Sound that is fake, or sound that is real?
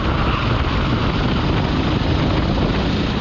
real